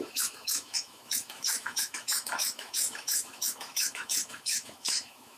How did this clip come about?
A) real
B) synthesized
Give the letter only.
B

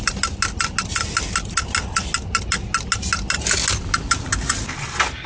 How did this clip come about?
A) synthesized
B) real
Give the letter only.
B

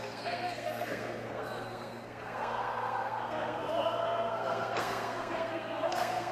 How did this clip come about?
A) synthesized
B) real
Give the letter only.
A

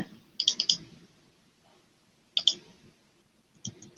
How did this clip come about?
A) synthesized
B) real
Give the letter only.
B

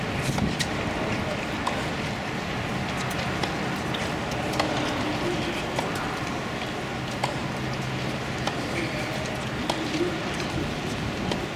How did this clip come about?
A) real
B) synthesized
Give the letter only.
A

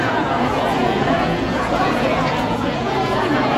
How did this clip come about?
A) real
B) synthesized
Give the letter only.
B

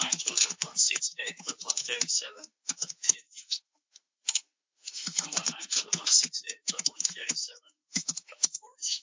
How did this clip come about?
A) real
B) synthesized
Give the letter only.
B